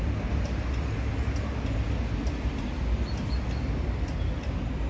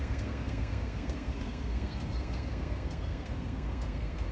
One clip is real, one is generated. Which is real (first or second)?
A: first